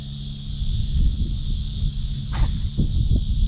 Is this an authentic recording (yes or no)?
yes